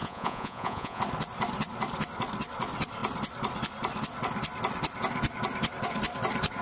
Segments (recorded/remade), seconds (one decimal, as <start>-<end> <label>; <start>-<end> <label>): 0.0-1.0 remade; 1.0-6.6 recorded